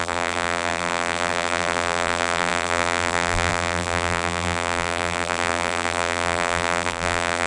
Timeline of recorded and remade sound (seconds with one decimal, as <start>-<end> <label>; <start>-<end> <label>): 0.0-7.5 remade